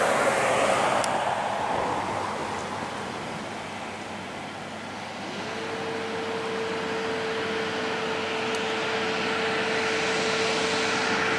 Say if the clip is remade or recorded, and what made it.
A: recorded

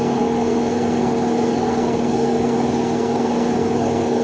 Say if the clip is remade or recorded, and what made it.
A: remade, codec, SNAC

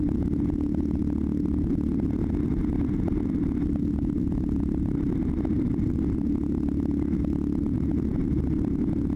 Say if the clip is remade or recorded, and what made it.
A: recorded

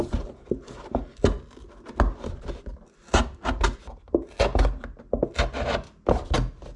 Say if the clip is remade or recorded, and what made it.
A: recorded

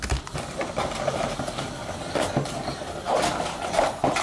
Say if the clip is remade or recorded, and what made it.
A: recorded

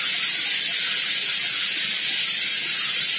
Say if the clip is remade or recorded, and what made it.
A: recorded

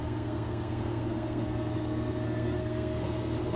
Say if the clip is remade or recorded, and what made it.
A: remade, codec, SNAC